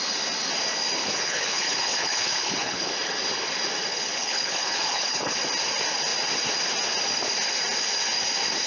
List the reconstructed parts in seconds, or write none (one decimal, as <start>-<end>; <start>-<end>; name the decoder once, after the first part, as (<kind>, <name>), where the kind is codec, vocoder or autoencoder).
1.0-2.9 (codec, HILCodec); 3.9-5.4